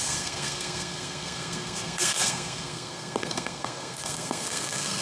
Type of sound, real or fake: fake